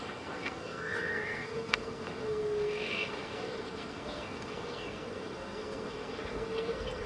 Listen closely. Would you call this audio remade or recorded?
remade